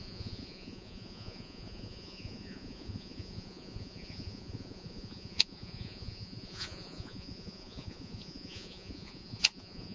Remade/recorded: remade